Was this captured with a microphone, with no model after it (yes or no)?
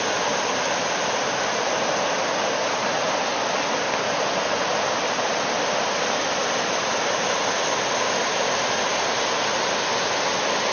yes